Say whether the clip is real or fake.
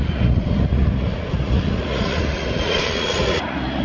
fake